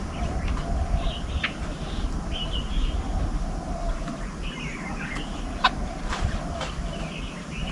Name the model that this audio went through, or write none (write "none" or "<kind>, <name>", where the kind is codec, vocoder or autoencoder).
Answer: none